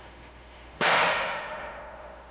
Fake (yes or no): yes